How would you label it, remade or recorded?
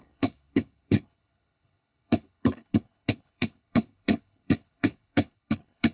remade